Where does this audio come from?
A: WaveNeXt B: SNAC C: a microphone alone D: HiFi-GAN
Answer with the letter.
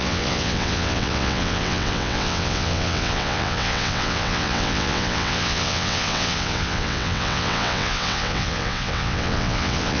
A